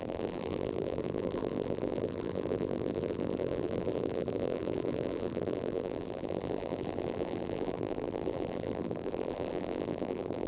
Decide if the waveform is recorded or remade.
remade